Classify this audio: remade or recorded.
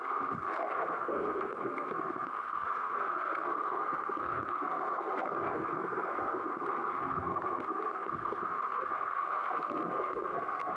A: remade